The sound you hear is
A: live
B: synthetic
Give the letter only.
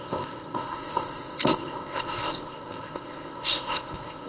B